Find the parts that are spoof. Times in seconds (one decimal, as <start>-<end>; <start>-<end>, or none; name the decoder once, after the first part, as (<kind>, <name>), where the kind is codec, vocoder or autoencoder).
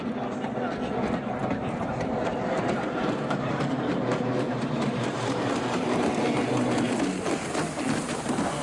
1.4-6.2 (vocoder, BigVGAN v2)